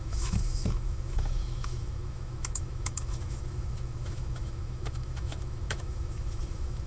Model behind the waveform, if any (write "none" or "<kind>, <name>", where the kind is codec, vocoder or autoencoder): autoencoder, DAC-VAE